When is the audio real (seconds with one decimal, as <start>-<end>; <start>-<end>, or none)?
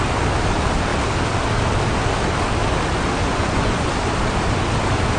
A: 0.0-3.3; 3.9-5.2